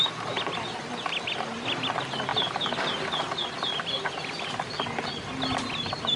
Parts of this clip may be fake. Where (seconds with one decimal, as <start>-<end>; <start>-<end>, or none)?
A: none